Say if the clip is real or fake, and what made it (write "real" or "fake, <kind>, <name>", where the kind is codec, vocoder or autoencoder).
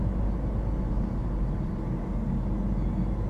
real